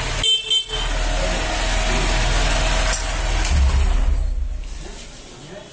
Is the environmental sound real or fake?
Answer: real